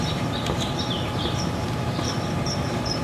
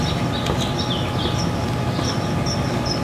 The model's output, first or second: first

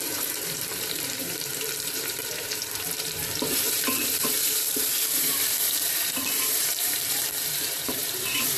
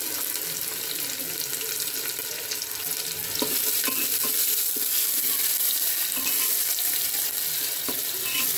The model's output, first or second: first